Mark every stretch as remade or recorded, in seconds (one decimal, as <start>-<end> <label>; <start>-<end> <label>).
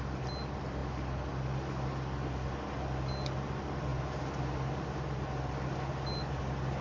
0.0-6.8 recorded